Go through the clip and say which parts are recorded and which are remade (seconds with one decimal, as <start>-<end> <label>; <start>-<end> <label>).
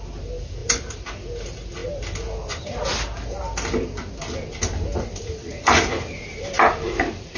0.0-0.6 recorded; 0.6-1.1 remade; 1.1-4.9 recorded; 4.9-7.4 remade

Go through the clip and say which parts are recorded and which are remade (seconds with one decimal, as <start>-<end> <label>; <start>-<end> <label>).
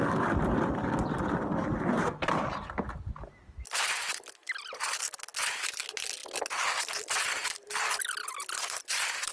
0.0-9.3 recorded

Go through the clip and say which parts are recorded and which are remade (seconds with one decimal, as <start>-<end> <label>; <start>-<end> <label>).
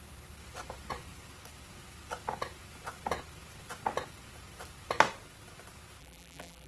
0.0-6.0 recorded; 6.0-6.7 remade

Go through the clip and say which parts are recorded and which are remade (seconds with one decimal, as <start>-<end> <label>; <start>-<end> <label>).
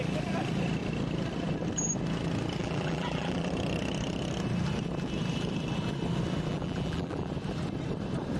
0.0-2.6 recorded; 2.6-3.5 remade; 3.5-6.5 recorded; 6.5-7.3 remade; 7.3-8.4 recorded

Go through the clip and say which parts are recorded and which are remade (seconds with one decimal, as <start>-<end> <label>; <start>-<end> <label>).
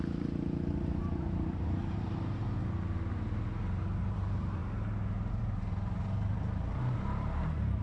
0.0-2.4 remade; 2.4-4.0 recorded; 4.0-4.6 remade; 4.6-5.3 recorded; 5.3-7.8 remade